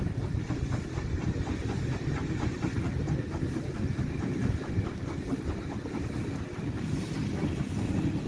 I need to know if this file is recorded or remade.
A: recorded